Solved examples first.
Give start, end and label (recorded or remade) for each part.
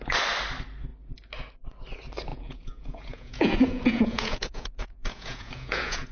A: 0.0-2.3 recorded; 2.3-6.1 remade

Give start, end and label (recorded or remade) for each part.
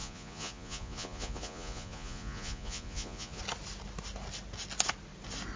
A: 0.0-3.4 remade; 3.4-5.6 recorded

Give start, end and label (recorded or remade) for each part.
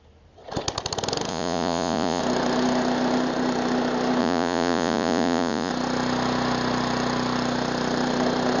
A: 0.0-1.3 recorded; 1.3-2.2 remade; 2.2-4.2 recorded; 4.2-5.7 remade; 5.7-8.6 recorded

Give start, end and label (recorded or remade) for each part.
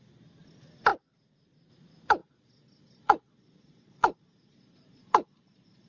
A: 0.0-2.2 recorded; 2.2-5.9 remade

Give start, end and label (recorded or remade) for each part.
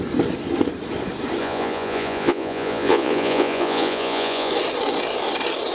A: 0.0-1.4 recorded; 1.4-4.5 remade; 4.5-5.7 recorded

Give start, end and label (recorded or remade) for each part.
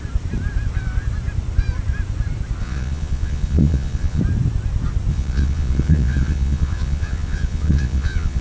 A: 0.0-2.6 recorded; 2.6-4.2 remade; 4.2-5.1 recorded; 5.1-8.4 remade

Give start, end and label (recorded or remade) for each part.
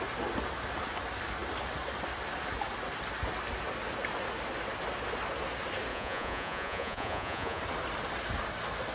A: 0.0-5.9 recorded; 5.9-7.6 remade; 7.6-8.9 recorded